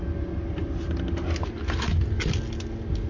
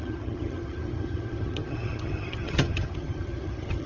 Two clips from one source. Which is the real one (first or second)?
first